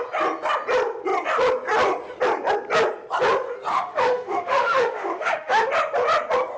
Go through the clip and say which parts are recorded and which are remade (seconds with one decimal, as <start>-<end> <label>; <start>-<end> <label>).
0.0-3.7 recorded; 3.7-5.7 remade; 5.7-6.6 recorded